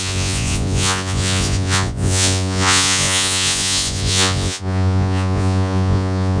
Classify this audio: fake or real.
fake